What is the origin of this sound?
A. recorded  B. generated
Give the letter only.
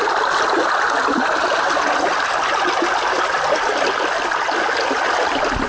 A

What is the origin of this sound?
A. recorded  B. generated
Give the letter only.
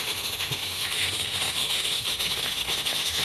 B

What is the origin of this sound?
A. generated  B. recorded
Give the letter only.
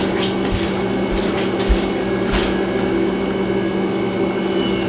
B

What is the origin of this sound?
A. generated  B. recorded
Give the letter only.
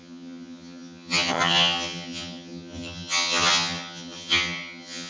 A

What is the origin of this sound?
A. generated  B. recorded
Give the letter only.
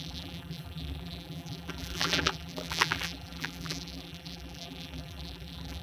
A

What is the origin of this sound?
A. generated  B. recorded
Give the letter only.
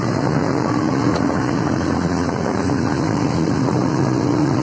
A